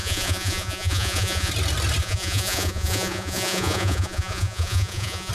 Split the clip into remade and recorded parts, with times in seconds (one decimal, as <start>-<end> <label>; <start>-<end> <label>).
0.0-1.5 remade; 1.5-2.0 recorded; 2.0-5.3 remade